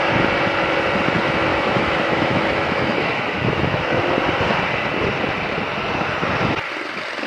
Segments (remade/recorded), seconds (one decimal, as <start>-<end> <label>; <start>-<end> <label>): 0.0-1.5 recorded; 1.5-3.8 remade; 3.8-7.3 recorded